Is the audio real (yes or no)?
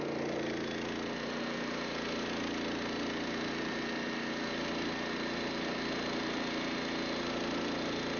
yes